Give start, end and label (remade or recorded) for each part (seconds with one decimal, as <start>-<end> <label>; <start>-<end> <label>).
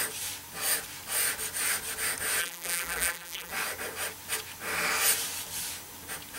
0.0-2.4 recorded; 2.4-3.5 remade; 3.5-6.4 recorded